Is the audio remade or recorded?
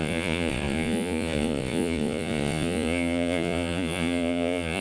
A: remade